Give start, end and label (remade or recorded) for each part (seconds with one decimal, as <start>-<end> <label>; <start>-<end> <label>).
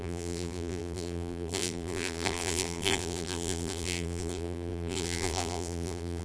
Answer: 0.0-6.2 remade